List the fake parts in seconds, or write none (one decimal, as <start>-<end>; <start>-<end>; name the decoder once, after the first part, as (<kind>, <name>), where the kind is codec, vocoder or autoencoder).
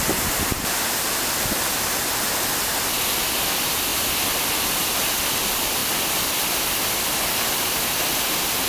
none